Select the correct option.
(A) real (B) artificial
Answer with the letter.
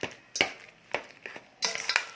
A